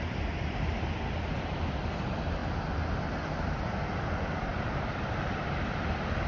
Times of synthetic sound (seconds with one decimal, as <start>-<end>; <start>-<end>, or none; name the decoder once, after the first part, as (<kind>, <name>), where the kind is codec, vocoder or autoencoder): 0.0-2.4 (vocoder, BigVGAN v2); 3.9-6.3